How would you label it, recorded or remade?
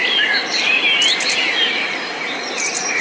recorded